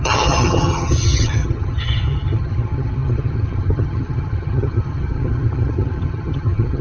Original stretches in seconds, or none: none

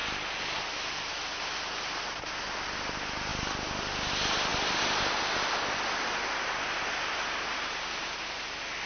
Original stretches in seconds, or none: 0.0-8.9

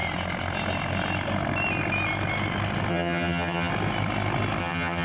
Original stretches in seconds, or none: 0.0-2.9; 3.7-4.6

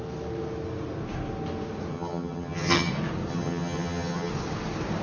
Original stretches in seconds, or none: 0.0-1.9; 2.9-3.3; 4.3-5.0